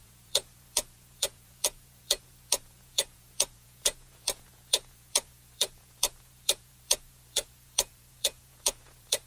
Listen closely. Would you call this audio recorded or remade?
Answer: remade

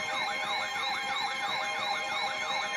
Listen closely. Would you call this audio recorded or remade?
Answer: remade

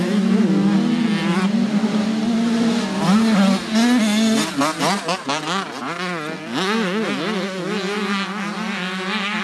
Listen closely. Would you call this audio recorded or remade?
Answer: recorded